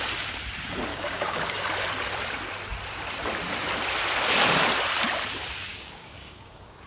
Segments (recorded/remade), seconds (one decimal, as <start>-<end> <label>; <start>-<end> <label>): 0.0-0.9 recorded; 0.9-1.7 remade; 1.7-5.7 recorded; 5.7-6.9 remade

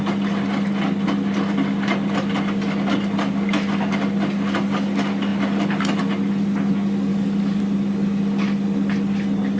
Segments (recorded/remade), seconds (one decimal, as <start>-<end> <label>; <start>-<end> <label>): 0.0-7.1 recorded; 7.1-7.6 remade; 7.6-9.6 recorded

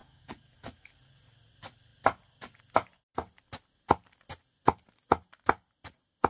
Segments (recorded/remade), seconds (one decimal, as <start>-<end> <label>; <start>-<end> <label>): 0.0-0.9 remade; 0.9-6.3 recorded

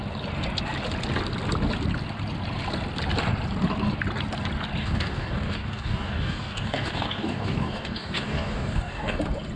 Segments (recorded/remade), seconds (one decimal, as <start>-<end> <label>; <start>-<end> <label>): 0.0-4.8 recorded; 4.8-9.2 remade; 9.2-9.6 recorded

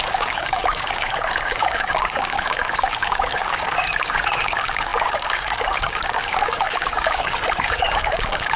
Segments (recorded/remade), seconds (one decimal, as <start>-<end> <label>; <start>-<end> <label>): 0.0-8.6 remade

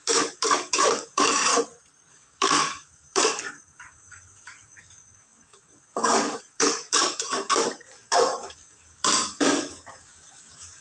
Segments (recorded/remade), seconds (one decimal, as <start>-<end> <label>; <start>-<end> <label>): 0.0-1.5 remade; 1.5-2.1 recorded; 2.1-10.8 remade

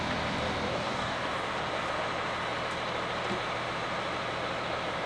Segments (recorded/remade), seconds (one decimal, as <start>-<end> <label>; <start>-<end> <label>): 0.0-0.7 recorded; 0.7-1.3 remade; 1.3-5.1 recorded